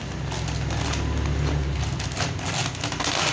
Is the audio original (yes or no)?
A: yes